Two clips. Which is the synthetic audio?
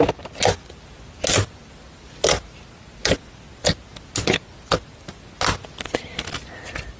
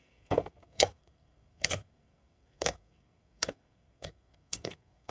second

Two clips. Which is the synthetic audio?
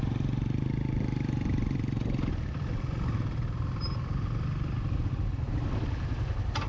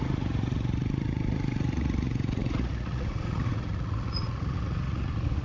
second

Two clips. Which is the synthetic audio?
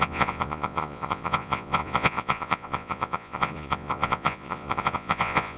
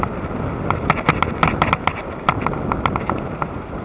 first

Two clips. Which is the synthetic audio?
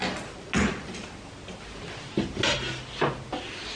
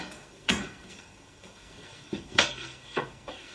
second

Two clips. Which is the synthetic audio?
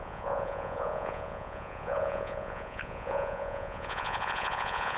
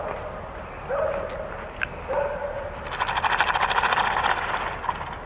first